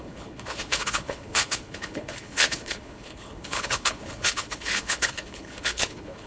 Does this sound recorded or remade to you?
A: remade